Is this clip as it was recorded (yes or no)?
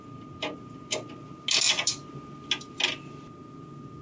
yes